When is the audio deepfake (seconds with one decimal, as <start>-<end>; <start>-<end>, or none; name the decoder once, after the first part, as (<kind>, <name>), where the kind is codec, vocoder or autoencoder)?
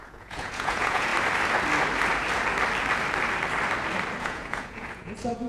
0.0-1.1 (vocoder, Vocos); 4.2-5.5